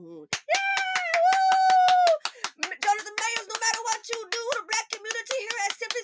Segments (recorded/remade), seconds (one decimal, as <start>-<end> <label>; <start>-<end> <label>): 0.0-6.0 recorded